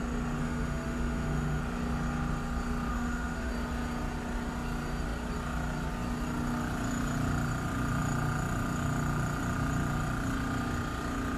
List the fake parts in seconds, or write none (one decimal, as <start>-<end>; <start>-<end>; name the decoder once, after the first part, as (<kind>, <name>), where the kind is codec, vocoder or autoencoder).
0.4-1.6 (autoencoder, DAC-VAE); 2.9-3.5